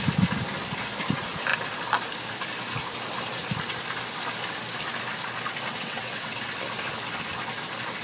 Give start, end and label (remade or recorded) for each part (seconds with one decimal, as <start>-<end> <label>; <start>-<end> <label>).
0.0-5.7 recorded; 5.7-6.4 remade; 6.4-8.0 recorded